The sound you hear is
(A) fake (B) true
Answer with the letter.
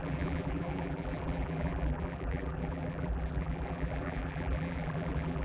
A